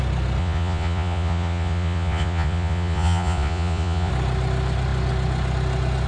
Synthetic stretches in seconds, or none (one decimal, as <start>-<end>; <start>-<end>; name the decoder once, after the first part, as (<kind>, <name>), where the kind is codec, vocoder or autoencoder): 0.4-4.1 (vocoder, Vocos)